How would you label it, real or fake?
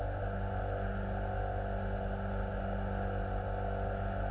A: real